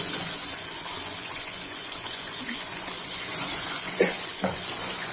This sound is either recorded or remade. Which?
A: remade